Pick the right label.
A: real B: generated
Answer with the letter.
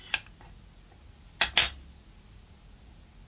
A